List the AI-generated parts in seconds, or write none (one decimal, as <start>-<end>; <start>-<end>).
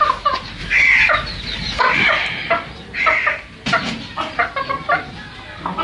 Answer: none